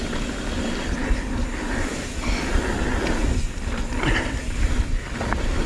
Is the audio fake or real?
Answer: real